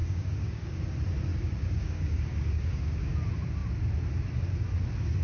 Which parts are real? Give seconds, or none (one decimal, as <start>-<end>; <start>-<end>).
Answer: 0.8-1.3; 3.1-5.2